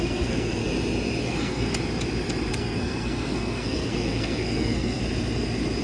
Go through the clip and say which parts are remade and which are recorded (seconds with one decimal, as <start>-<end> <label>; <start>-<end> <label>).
0.0-0.6 remade; 0.6-1.2 recorded; 1.2-1.7 remade; 1.7-2.5 recorded; 2.5-5.0 remade; 5.0-5.8 recorded